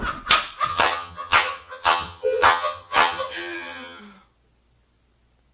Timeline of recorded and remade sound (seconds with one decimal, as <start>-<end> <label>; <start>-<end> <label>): 0.0-0.7 recorded; 0.7-4.0 remade; 4.0-5.5 recorded